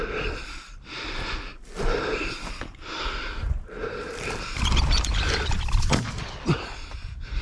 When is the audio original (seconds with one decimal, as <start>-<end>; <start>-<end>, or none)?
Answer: 0.0-1.5; 2.5-3.8